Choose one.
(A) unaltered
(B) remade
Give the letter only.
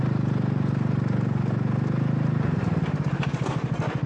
A